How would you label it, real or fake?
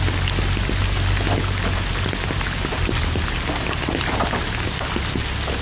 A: real